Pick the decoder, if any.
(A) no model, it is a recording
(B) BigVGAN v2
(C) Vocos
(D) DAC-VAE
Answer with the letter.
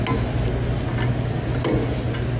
A